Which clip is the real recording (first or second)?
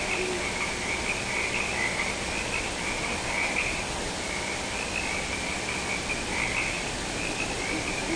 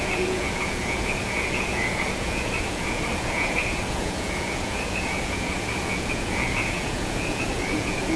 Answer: first